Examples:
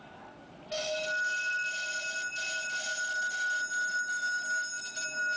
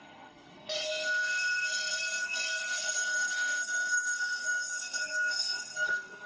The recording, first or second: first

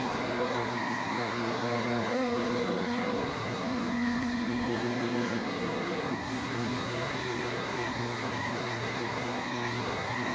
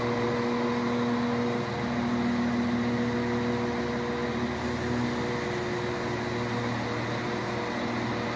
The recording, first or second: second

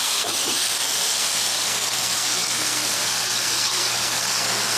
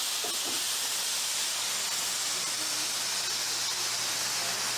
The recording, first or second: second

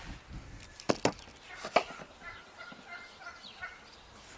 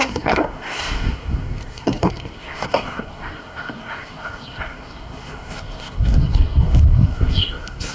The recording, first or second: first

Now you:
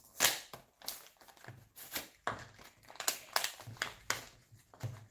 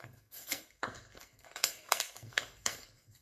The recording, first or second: first